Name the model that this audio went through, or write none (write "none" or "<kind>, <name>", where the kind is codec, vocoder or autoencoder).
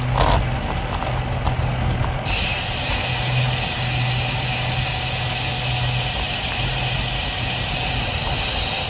none